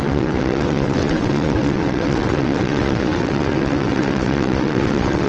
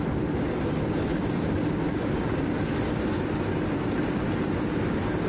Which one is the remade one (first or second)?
first